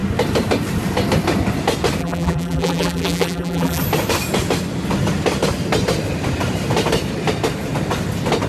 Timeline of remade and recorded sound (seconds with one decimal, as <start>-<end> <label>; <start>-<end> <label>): 0.0-2.0 recorded; 2.0-3.8 remade; 3.8-8.5 recorded